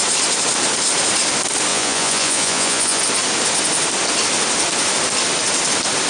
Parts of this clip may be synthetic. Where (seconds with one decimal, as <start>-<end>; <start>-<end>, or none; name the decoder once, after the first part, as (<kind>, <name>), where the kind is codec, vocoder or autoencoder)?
1.7-3.0 (vocoder, Vocos)